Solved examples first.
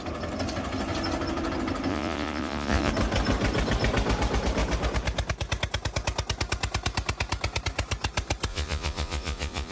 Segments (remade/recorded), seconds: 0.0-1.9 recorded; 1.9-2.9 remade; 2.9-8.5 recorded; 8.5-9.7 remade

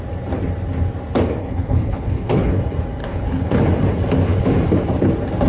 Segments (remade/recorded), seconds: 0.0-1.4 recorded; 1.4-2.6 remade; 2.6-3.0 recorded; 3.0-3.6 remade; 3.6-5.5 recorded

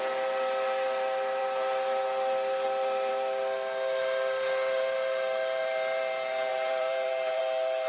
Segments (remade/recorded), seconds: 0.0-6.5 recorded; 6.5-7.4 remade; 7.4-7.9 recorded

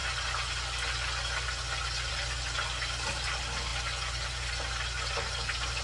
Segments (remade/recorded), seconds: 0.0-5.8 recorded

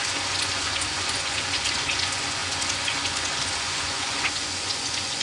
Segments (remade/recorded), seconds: 0.0-5.2 remade

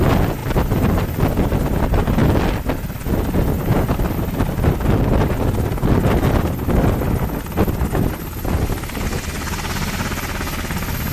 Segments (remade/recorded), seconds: 0.0-11.1 recorded